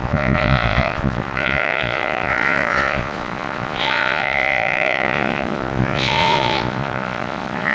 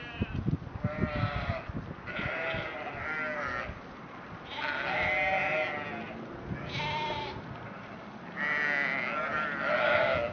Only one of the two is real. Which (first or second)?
second